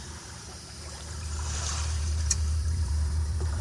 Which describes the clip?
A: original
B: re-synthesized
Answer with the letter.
B